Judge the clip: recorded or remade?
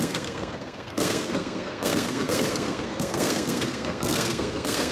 remade